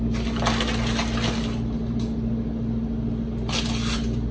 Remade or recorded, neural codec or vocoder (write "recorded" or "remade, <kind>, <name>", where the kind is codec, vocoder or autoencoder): recorded